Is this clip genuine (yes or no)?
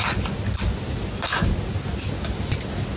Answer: yes